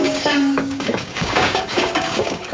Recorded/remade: remade